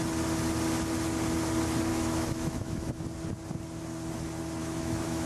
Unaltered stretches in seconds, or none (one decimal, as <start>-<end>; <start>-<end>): 0.0-1.9; 3.0-4.6